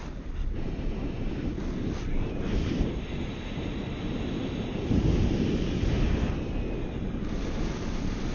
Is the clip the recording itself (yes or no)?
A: yes